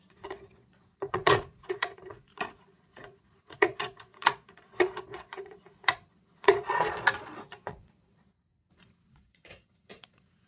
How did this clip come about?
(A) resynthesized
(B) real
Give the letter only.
A